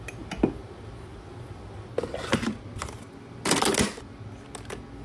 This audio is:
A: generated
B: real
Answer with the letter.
B